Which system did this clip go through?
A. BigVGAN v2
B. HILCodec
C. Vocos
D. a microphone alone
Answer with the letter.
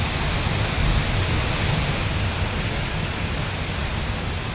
D